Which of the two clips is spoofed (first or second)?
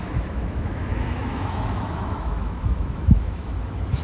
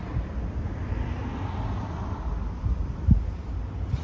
first